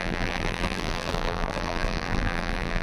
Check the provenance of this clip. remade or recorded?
remade